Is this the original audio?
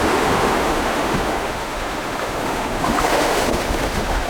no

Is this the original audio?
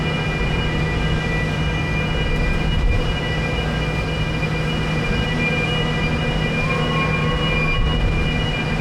yes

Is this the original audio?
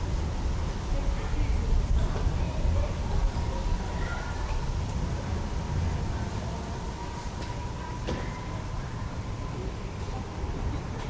yes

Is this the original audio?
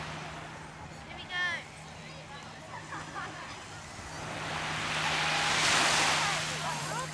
yes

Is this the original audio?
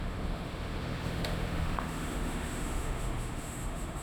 no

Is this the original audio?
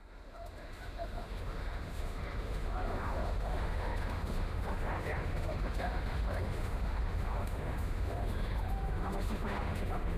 no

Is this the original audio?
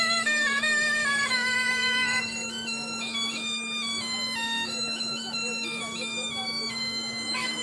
no